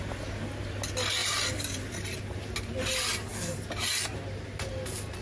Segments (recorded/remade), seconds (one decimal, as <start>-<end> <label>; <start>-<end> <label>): 0.0-1.2 recorded; 1.2-2.2 remade; 2.2-5.2 recorded